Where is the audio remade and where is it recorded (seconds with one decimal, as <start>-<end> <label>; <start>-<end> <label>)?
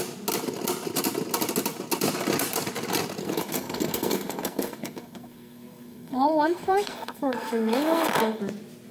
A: 0.0-3.2 recorded; 3.2-8.4 remade; 8.4-8.9 recorded